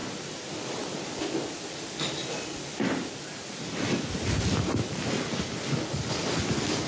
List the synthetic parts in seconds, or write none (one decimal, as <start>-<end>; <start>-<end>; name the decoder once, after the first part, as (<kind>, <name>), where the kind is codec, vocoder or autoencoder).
none